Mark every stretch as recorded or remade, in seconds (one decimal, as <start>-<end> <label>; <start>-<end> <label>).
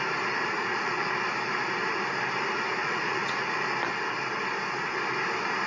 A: 0.0-0.5 recorded; 0.5-1.1 remade; 1.1-2.8 recorded; 2.8-3.6 remade; 3.6-5.7 recorded